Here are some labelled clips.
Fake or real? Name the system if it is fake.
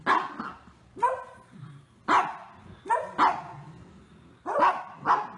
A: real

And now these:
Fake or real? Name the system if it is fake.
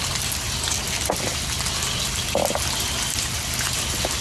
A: real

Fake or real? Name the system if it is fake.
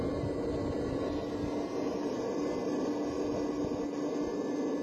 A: real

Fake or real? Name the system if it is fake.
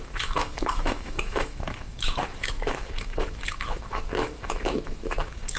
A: fake, autoencoder, DAC-VAE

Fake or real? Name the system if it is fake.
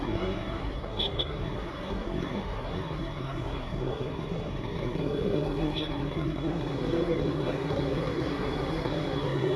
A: fake, codec, SNAC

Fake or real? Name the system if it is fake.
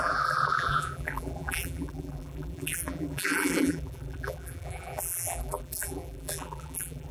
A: fake, vocoder, BigVGAN v2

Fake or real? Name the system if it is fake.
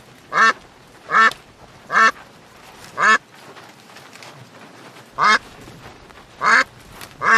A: real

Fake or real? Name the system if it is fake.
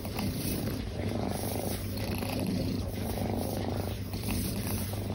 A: fake, vocoder, BigVGAN v2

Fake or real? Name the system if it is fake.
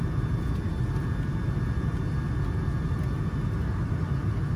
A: real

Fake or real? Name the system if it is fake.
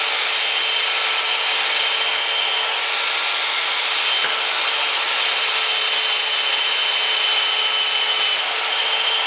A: real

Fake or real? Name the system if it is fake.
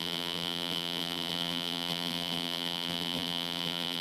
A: fake, vocoder, BigVGAN v2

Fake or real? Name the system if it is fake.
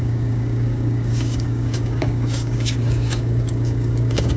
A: fake, codec, DAC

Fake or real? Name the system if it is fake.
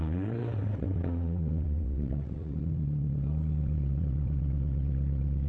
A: fake, vocoder, WaveNeXt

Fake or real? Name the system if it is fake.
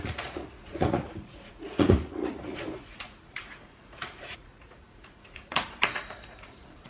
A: fake, vocoder, Vocos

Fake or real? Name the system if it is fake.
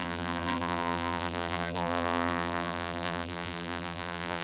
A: fake, vocoder, BigVGAN v2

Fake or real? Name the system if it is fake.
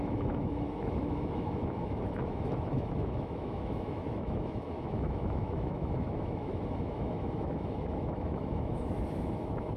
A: fake, autoencoder, DAC-VAE